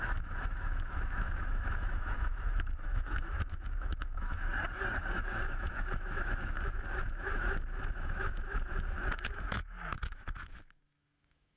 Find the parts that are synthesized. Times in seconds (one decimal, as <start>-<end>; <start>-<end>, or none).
0.0-4.5; 5.1-11.6